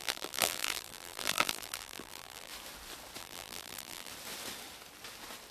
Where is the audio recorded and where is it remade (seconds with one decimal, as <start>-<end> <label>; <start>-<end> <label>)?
0.0-2.5 remade; 2.5-3.2 recorded; 3.2-4.1 remade; 4.1-5.5 recorded